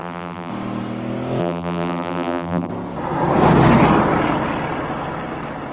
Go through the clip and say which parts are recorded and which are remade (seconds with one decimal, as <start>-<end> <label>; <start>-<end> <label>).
0.0-0.5 remade; 0.5-1.4 recorded; 1.4-2.7 remade; 2.7-5.7 recorded